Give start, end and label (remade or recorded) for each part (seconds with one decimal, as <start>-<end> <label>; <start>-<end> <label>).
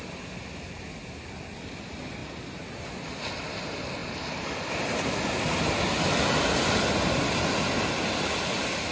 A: 0.0-8.9 recorded